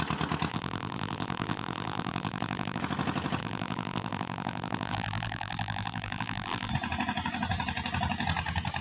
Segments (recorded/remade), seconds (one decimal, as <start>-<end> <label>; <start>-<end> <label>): 0.0-0.5 recorded; 0.5-2.8 remade; 2.8-3.4 recorded; 3.4-6.7 remade; 6.7-8.8 recorded